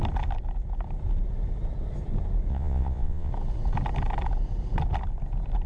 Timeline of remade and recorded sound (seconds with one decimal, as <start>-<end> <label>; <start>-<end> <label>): 0.0-2.5 recorded; 2.5-3.3 remade; 3.3-5.7 recorded